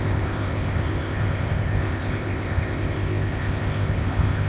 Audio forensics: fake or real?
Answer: fake